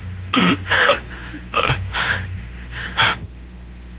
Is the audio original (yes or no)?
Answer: no